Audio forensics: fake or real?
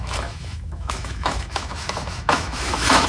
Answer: fake